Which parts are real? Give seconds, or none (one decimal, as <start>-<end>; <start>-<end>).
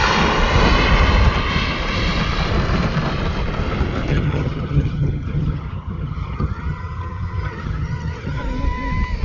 0.0-4.1; 8.4-9.2